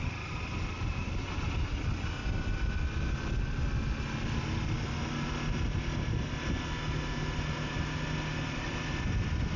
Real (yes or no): yes